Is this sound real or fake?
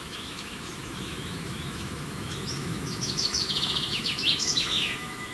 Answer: fake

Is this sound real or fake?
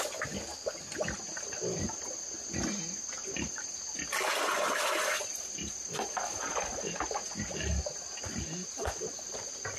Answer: real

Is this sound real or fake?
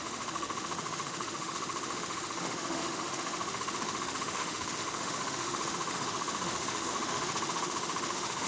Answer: fake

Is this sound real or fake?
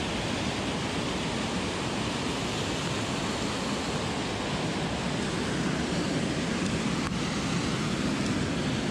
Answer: real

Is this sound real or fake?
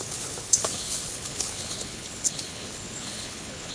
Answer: fake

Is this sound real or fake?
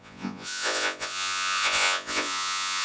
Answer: fake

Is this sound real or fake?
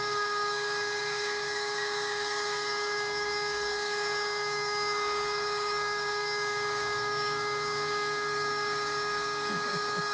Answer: fake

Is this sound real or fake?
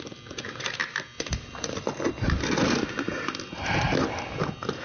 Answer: real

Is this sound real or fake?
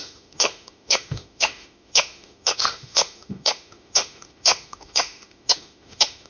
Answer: fake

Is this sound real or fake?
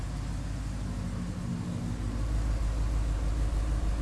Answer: real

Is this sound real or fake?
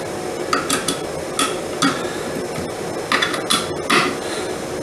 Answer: real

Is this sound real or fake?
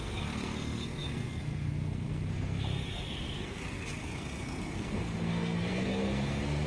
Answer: fake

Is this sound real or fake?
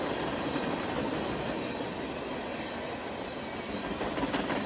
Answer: real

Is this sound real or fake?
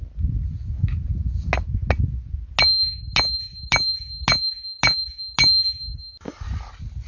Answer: real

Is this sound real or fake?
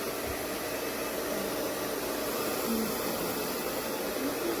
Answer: real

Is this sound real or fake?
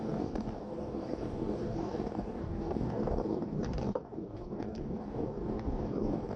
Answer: fake